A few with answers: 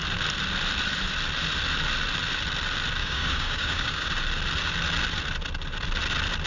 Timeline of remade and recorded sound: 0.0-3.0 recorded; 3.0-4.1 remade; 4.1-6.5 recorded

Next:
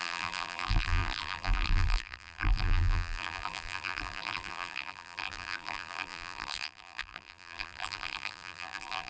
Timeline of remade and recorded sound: 0.0-9.1 remade

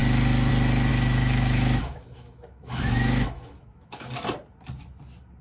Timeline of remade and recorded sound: 0.0-0.9 recorded; 0.9-4.1 remade; 4.1-5.4 recorded